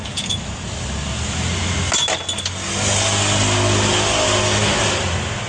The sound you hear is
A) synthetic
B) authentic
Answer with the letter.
B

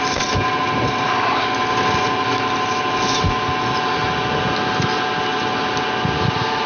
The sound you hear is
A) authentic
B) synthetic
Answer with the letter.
A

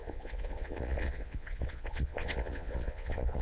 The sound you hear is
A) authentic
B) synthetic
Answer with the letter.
B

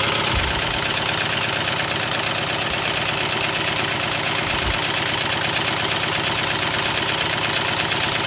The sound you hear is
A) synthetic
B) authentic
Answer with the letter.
B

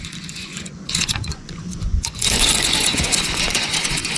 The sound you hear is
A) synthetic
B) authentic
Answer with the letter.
A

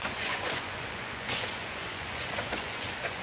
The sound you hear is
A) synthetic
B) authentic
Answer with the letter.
A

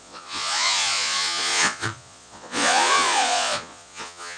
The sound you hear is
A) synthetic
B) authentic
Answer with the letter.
A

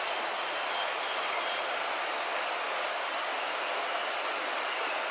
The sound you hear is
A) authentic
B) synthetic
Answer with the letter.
A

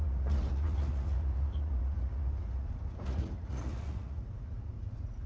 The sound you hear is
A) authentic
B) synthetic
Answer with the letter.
B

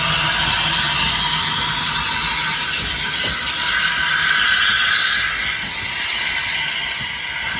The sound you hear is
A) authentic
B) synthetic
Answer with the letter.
A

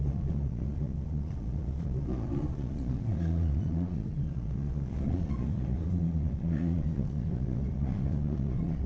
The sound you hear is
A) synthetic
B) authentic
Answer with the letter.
A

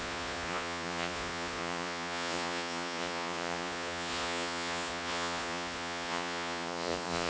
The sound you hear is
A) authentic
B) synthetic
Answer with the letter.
B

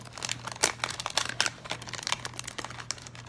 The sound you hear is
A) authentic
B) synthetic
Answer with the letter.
A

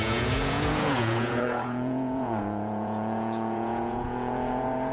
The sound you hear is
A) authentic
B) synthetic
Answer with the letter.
B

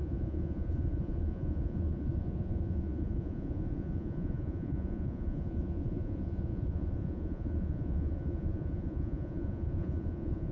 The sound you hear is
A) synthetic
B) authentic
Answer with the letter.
A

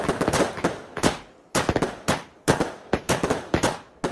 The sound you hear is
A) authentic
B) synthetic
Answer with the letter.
A